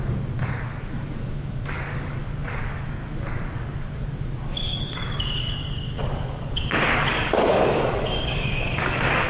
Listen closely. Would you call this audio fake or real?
fake